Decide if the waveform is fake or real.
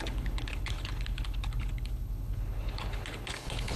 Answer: fake